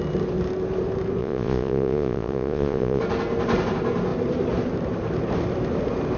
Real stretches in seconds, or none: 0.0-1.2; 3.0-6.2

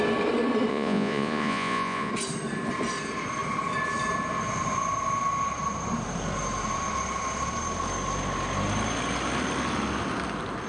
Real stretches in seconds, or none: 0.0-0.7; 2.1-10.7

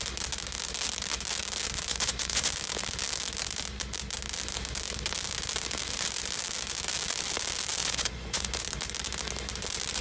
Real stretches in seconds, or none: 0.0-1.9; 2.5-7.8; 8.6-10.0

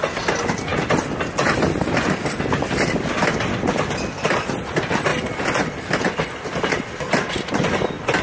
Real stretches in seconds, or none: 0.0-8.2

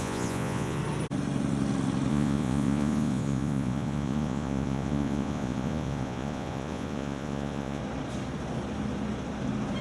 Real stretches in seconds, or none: 0.8-2.1; 7.8-9.8

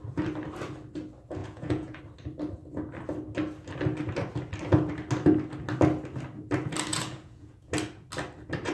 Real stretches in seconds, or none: 0.0-1.4; 2.0-6.9; 7.7-8.7

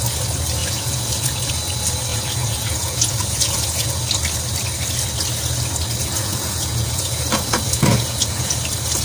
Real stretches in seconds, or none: 0.0-0.6; 1.5-2.1; 4.0-6.0; 8.6-9.0

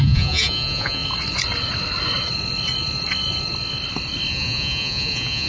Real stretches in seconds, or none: 1.0-4.3